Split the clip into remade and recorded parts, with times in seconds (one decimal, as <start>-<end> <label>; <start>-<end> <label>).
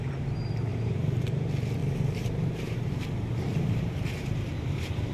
0.0-0.7 recorded; 0.7-1.2 remade; 1.2-1.8 recorded; 1.8-5.1 remade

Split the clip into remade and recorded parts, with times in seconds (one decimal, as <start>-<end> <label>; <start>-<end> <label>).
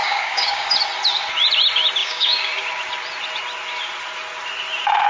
0.0-0.7 remade; 0.7-2.0 recorded; 2.0-2.6 remade; 2.6-5.1 recorded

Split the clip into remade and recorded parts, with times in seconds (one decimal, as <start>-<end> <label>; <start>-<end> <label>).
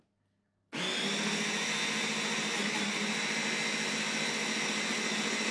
0.0-5.5 recorded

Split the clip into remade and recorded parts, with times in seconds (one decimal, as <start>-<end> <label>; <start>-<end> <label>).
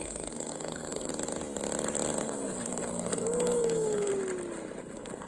0.0-1.1 remade; 1.1-2.2 recorded; 2.2-4.1 remade; 4.1-4.8 recorded; 4.8-5.3 remade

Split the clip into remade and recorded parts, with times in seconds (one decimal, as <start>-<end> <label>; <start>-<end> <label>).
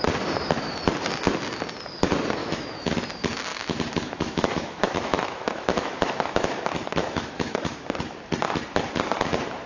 0.0-2.4 recorded; 2.4-2.9 remade; 2.9-3.5 recorded; 3.5-6.6 remade; 6.6-7.0 recorded; 7.0-8.0 remade; 8.0-9.7 recorded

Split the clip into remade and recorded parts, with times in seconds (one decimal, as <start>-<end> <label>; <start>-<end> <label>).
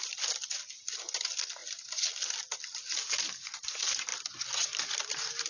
0.0-5.5 recorded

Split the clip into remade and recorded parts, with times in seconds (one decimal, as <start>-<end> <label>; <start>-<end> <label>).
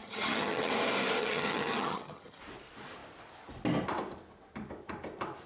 0.0-0.7 remade; 0.7-1.2 recorded; 1.2-2.4 remade; 2.4-5.5 recorded